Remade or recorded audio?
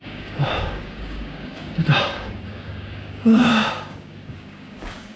remade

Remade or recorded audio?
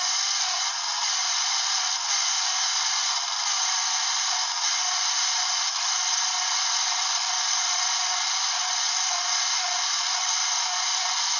recorded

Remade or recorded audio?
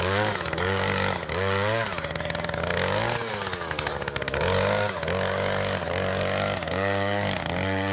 remade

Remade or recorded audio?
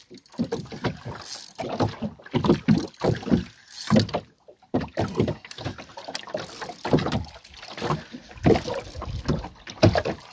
recorded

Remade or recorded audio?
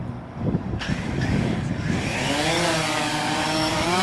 remade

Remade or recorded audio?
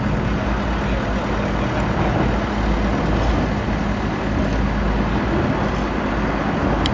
recorded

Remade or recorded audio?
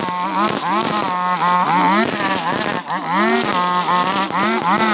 recorded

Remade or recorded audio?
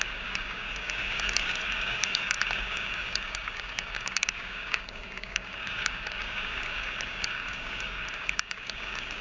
remade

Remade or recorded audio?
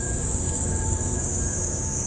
remade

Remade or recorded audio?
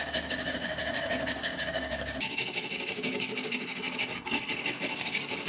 remade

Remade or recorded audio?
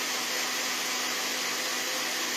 recorded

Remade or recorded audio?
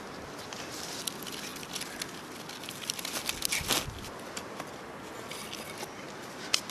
recorded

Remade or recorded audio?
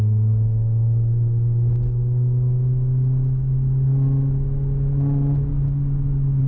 recorded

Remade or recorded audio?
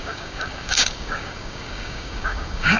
remade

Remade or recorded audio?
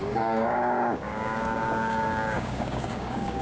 remade